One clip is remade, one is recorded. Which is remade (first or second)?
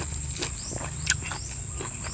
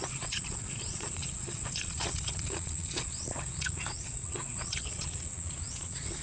second